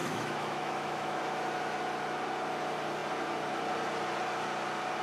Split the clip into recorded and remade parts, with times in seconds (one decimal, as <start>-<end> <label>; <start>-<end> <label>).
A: 0.0-1.2 remade; 1.2-5.0 recorded